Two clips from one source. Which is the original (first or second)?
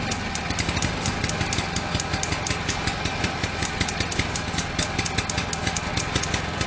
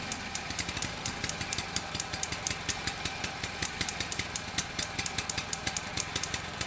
first